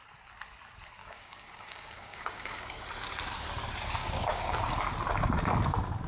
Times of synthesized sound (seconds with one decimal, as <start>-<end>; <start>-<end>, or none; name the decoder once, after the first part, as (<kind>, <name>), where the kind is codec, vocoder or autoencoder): 1.0-2.8 (codec, DAC); 4.0-4.7